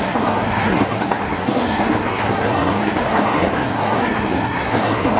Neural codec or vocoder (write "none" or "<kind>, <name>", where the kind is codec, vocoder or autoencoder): codec, SNAC